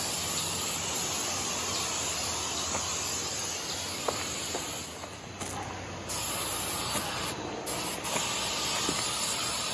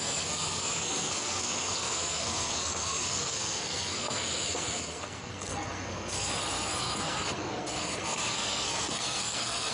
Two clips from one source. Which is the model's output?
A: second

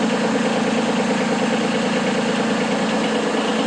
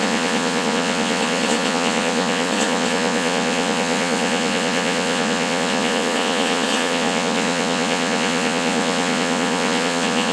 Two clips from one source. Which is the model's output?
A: second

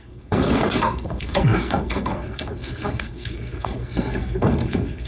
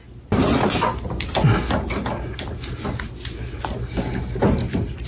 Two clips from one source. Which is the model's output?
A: first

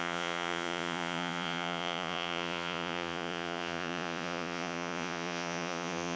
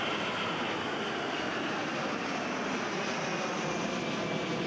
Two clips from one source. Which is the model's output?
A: first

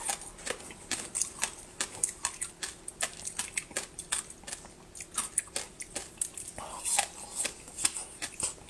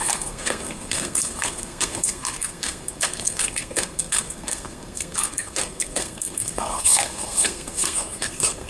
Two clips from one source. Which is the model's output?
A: second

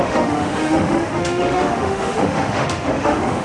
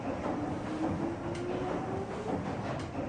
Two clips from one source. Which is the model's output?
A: first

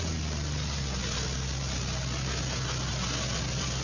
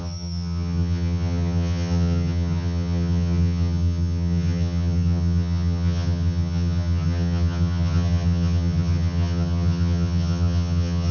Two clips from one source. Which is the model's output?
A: second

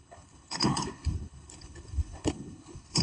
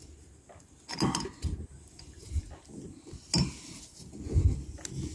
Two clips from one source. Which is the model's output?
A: first